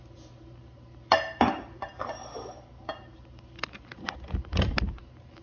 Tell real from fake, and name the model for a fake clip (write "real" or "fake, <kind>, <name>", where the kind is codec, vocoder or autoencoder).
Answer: real